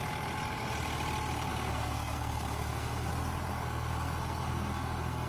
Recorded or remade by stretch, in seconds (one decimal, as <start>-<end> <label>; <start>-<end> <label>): 0.0-1.5 recorded; 1.5-3.1 remade; 3.1-3.5 recorded; 3.5-5.3 remade